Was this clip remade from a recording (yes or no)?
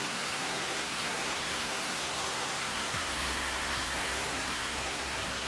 yes